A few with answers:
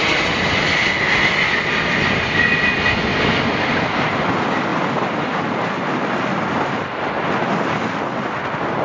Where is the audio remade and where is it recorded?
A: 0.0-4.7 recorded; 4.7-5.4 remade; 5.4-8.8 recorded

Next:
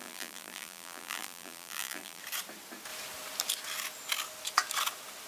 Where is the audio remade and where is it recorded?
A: 0.0-2.2 remade; 2.2-5.3 recorded

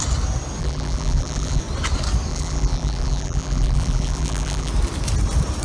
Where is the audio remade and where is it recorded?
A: 0.0-0.6 recorded; 0.6-1.6 remade; 1.6-2.3 recorded; 2.3-4.7 remade; 4.7-5.6 recorded

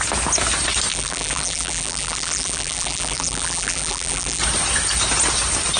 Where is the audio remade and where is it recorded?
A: 0.0-0.9 recorded; 0.9-4.4 remade; 4.4-5.8 recorded